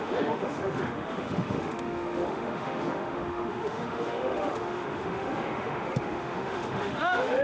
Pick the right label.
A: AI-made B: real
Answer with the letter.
A